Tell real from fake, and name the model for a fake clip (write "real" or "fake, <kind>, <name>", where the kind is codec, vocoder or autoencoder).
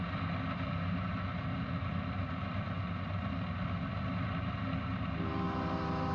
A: real